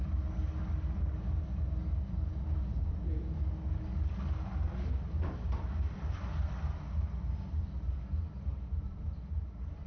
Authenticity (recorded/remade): recorded